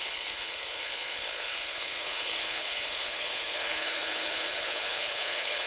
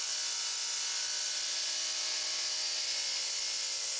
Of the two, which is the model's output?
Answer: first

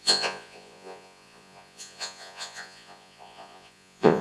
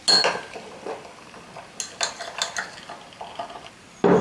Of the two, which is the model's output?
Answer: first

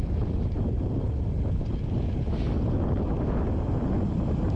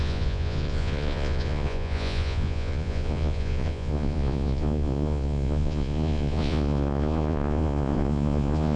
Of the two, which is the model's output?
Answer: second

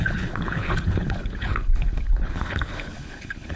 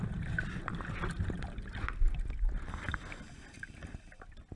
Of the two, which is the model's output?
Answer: first